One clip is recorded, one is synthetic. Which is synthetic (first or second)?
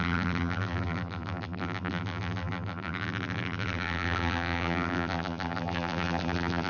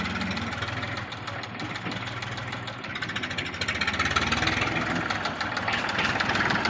first